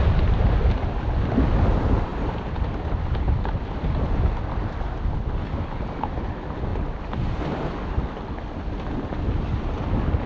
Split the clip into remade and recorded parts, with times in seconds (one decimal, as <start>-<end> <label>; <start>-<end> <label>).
0.0-10.3 recorded